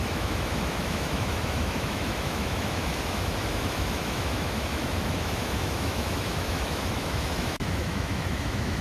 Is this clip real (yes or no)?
no